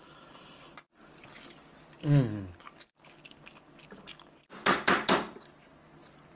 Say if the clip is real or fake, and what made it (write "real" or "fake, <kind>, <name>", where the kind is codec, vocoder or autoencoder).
real